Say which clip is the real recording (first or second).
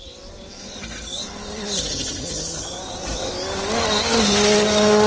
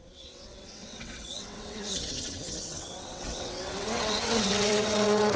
first